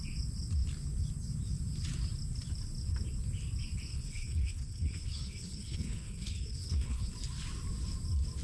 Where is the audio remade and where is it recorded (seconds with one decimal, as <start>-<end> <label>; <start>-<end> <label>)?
0.0-3.9 recorded; 3.9-7.1 remade; 7.1-8.4 recorded